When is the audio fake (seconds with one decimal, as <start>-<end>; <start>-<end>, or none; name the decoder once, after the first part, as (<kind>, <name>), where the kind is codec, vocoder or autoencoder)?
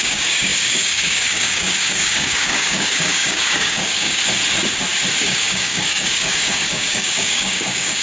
0.0-4.2 (codec, DAC); 5.2-8.0